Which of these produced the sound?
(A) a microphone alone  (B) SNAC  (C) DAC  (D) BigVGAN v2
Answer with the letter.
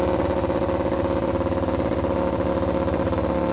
A